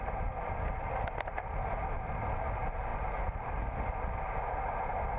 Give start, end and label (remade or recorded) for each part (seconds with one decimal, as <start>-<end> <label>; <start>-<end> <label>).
0.0-5.2 recorded

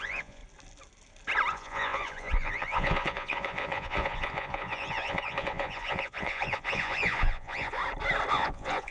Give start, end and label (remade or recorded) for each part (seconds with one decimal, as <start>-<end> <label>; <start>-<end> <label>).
0.0-0.4 remade; 0.4-1.5 recorded; 1.5-7.8 remade; 7.8-8.3 recorded; 8.3-8.9 remade

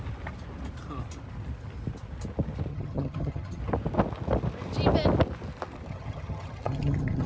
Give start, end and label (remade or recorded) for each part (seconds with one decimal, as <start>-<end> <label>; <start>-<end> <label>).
0.0-2.7 recorded; 2.7-3.6 remade; 3.6-5.9 recorded; 5.9-7.3 remade